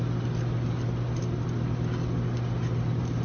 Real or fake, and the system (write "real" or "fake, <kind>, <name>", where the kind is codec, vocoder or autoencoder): real